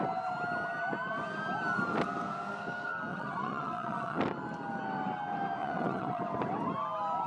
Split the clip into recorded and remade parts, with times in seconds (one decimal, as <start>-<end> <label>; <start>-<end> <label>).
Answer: 0.0-3.1 recorded; 3.1-4.2 remade; 4.2-5.6 recorded; 5.6-6.2 remade; 6.2-7.3 recorded